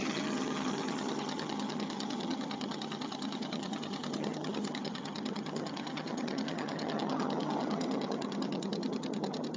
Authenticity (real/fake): fake